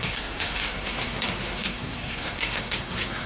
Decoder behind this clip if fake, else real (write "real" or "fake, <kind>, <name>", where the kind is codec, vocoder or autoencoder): fake, codec, SNAC